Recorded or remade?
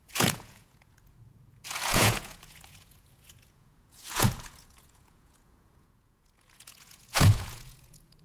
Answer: remade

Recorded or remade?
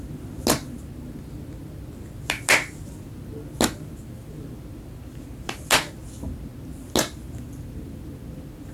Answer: recorded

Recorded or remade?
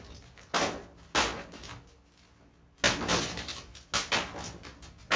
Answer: recorded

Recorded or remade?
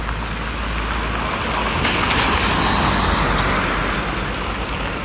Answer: recorded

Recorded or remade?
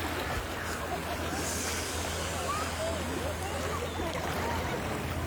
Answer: recorded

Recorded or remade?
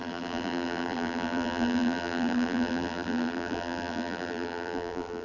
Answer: remade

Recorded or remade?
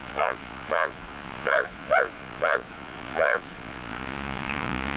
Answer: remade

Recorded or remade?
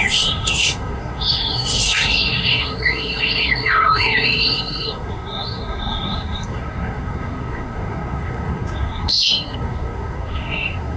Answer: remade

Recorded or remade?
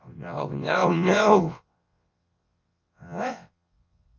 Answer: remade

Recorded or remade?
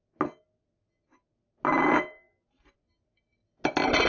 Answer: recorded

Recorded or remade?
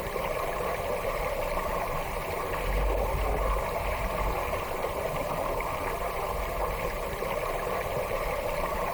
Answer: remade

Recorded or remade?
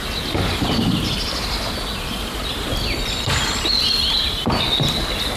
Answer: recorded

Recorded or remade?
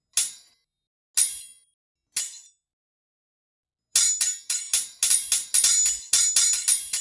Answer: recorded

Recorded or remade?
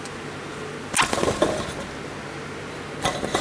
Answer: recorded